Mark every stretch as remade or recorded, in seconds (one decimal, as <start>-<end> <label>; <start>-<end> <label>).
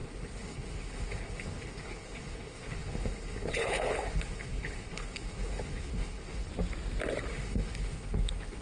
0.0-6.5 remade; 6.5-7.3 recorded; 7.3-8.6 remade